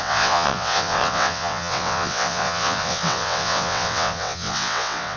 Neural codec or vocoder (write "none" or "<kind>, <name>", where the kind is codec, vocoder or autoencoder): vocoder, WaveNeXt